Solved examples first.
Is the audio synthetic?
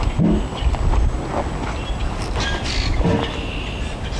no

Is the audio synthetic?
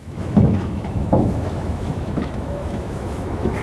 yes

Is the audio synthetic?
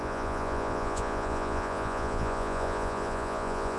yes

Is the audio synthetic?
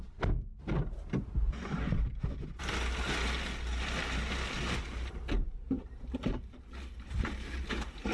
no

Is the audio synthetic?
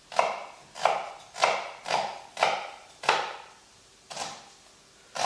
no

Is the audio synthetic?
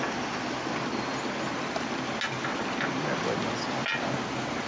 no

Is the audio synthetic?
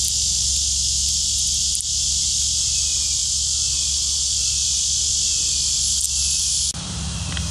no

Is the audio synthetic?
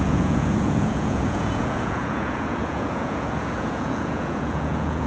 yes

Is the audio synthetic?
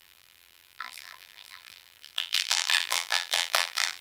yes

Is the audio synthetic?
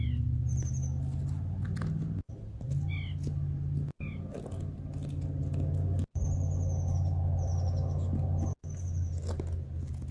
no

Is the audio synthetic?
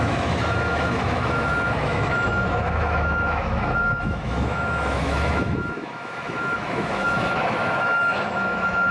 yes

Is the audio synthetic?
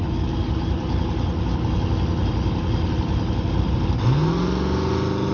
no